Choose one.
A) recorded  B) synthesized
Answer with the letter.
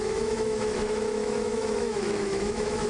B